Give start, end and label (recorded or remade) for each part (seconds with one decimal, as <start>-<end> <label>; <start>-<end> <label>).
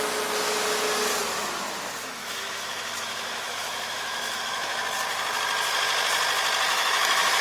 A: 0.0-2.0 recorded; 2.0-4.8 remade; 4.8-6.7 recorded; 6.7-7.4 remade